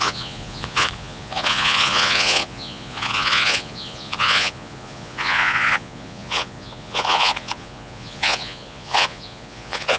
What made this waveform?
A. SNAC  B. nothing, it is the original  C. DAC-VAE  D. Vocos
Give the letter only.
D